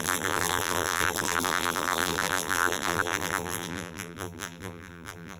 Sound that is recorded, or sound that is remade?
remade